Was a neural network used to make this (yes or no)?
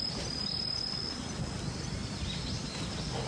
no